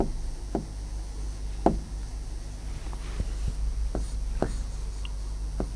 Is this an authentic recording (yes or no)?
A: yes